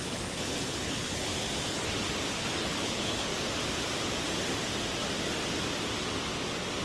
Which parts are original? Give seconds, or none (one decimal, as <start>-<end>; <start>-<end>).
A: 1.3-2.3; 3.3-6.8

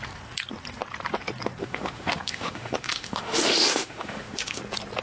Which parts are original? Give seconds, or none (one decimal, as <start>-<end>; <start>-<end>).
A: 0.0-1.6; 4.6-5.0

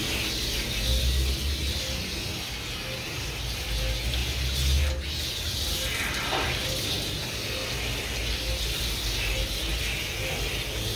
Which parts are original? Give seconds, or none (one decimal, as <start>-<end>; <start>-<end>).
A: 0.0-11.0

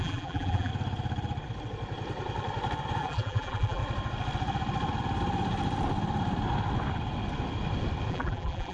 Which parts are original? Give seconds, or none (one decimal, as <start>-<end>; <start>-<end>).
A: 0.7-3.0; 3.8-8.1

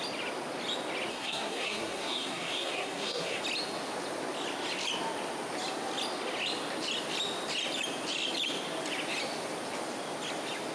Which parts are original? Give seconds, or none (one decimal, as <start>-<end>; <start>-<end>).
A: 0.0-1.1; 3.4-10.7